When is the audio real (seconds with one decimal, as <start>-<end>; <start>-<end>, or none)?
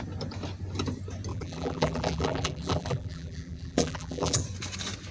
0.0-1.3; 4.4-5.1